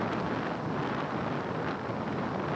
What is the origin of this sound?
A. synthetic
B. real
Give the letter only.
B